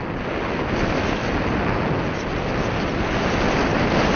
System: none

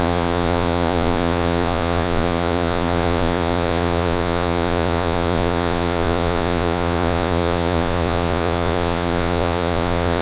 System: vocoder, Vocos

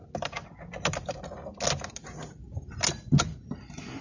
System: none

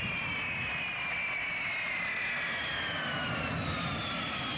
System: none